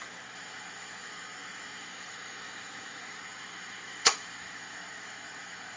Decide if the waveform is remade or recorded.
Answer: remade